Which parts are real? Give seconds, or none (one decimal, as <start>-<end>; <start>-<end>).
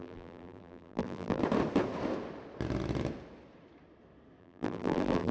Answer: 1.4-4.4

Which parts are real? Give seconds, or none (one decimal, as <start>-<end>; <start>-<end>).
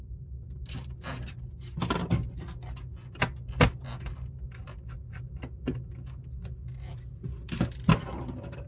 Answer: 0.0-8.7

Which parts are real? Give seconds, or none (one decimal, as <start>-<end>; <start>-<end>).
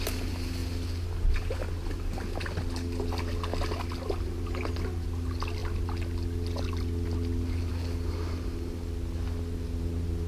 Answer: 0.0-10.3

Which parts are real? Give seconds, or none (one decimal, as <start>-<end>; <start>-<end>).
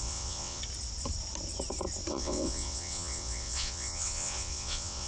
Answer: 0.6-2.1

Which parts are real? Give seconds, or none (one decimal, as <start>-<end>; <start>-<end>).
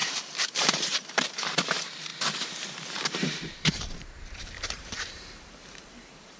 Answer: none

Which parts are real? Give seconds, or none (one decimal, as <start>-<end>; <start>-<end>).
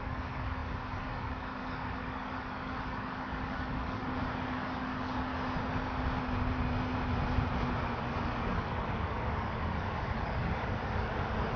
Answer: 5.3-8.0